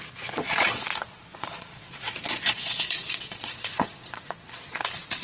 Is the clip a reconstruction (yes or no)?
yes